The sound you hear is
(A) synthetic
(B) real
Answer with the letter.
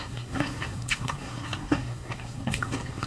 A